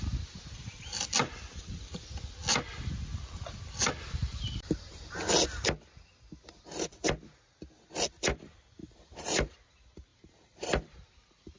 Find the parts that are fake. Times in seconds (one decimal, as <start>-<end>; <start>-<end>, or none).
4.2-5.0; 8.8-9.5; 10.1-11.6